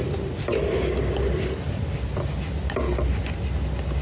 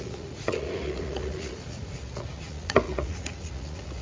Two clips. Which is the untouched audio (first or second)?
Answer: first